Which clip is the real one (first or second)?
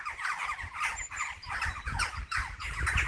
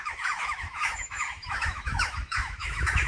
first